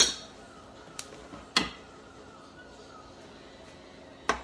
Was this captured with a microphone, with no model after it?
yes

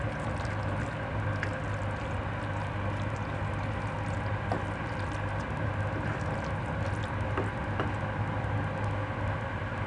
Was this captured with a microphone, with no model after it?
yes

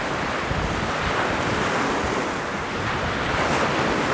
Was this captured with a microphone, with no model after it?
yes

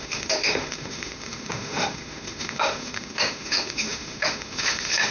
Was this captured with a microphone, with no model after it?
no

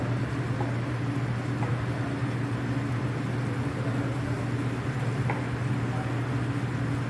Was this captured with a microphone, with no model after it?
yes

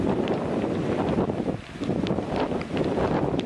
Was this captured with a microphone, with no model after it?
yes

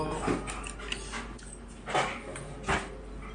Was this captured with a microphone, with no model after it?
yes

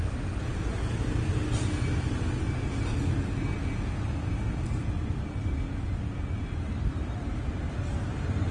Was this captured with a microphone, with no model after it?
yes